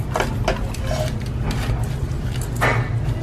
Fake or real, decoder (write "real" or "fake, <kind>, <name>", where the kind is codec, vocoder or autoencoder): real